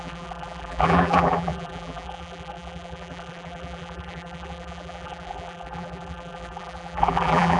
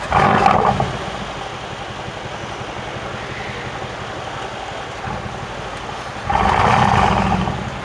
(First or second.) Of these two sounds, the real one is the second